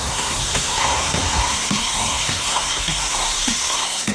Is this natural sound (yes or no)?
no